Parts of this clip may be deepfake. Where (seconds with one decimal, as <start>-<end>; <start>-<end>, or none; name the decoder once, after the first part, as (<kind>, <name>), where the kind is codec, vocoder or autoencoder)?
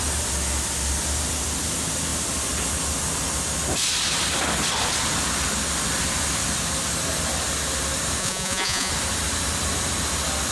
8.2-8.9 (vocoder, Vocos)